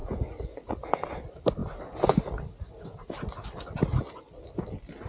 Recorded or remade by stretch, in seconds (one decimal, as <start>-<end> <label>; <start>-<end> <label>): 0.0-5.1 recorded

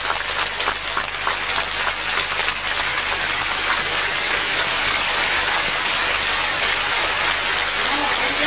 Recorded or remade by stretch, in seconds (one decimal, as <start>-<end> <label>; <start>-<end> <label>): 0.0-2.9 recorded; 2.9-7.2 remade; 7.2-8.5 recorded

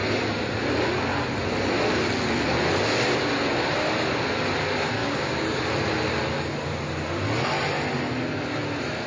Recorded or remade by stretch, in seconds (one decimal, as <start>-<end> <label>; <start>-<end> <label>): 0.0-5.0 recorded; 5.0-5.6 remade; 5.6-9.1 recorded

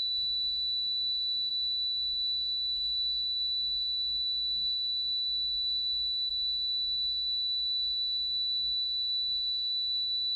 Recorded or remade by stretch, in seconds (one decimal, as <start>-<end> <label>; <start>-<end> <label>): 0.0-10.4 remade

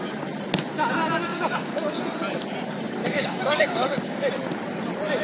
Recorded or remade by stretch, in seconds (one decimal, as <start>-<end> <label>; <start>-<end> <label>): 0.0-1.3 recorded; 1.3-2.0 remade; 2.0-3.0 recorded; 3.0-4.3 remade; 4.3-5.2 recorded

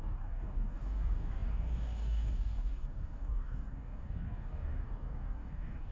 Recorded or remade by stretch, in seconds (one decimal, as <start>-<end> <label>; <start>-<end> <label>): 0.0-5.9 remade

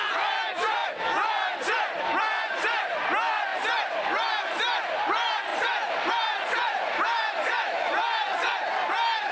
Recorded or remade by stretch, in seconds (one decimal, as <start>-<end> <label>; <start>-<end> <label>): 0.0-9.3 recorded